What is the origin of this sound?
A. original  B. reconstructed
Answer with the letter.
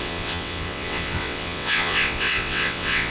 B